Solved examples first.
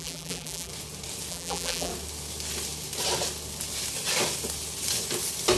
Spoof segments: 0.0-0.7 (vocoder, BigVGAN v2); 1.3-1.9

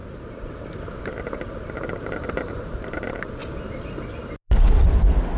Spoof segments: none